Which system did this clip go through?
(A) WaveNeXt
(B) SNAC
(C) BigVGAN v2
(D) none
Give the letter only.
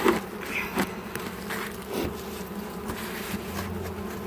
D